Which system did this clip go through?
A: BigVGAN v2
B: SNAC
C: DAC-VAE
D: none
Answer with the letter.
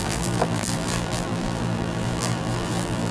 A